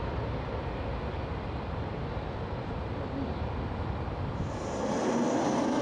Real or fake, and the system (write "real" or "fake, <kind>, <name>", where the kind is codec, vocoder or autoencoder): real